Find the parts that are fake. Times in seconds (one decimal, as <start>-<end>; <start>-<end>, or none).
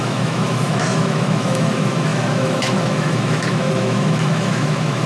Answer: 0.0-5.1